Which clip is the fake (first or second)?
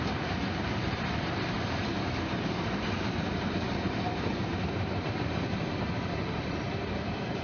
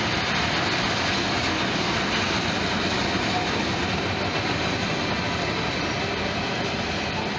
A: first